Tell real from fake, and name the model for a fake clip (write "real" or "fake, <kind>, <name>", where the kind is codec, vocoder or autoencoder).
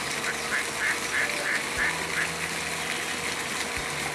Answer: real